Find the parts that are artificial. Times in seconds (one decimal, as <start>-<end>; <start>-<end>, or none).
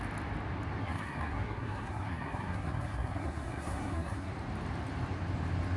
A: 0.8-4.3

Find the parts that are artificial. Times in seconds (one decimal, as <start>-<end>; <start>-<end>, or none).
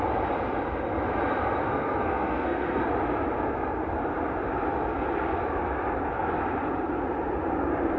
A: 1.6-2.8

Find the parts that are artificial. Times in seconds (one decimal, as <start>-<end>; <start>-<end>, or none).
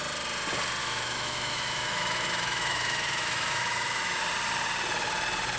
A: 0.8-4.2